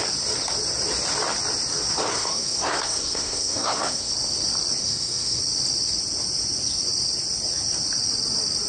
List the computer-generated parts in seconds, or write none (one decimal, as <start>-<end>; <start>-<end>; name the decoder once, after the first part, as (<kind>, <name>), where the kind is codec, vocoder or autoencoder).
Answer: 2.1-4.1 (codec, SNAC); 4.8-5.4